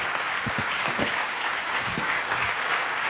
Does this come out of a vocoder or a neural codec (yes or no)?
yes